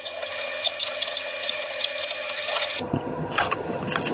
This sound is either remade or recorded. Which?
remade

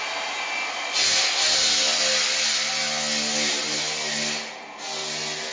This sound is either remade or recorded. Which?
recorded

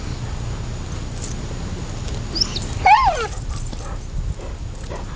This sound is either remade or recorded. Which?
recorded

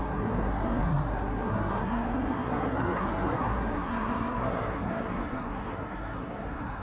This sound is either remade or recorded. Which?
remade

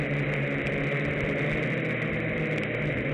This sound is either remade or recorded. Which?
recorded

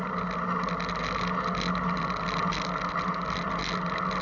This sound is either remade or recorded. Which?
recorded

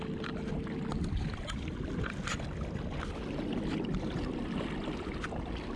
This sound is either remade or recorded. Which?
recorded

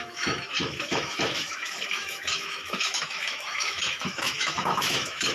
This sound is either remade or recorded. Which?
remade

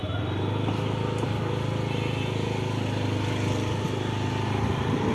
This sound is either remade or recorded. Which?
recorded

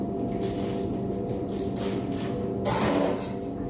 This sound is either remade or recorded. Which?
recorded